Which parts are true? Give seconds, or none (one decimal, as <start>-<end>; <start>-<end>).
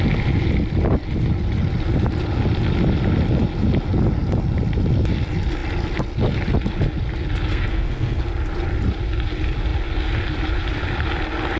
0.0-7.5; 8.2-11.6